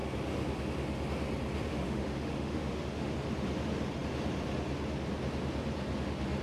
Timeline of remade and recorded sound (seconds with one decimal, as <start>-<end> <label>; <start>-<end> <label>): 0.0-1.7 recorded; 1.7-3.1 remade; 3.1-6.4 recorded